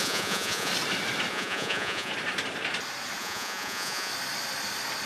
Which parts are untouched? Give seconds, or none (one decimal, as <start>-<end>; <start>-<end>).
0.7-1.3; 2.1-3.2; 4.1-5.1